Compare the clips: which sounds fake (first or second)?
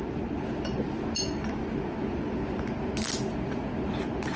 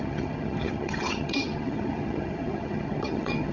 second